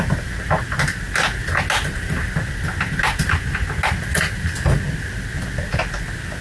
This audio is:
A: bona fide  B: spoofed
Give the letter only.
A